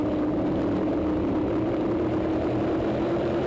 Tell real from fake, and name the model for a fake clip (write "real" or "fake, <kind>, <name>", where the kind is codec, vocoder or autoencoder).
real